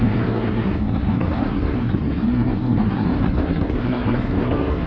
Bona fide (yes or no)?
no